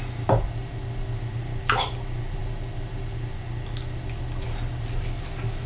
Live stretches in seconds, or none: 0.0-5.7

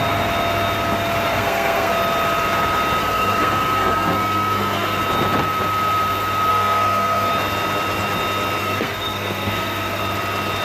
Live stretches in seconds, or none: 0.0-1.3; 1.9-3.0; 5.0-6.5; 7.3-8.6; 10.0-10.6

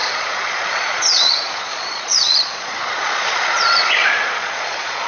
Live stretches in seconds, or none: none

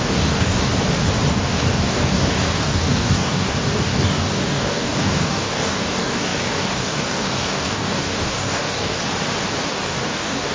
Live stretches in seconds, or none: 0.7-1.3; 9.0-9.7

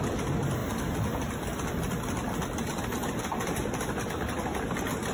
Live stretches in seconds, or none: 0.0-5.1